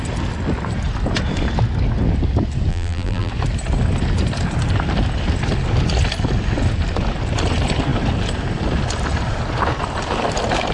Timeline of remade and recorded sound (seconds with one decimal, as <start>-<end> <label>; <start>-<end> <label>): 0.0-2.7 recorded; 2.7-3.3 remade; 3.3-10.7 recorded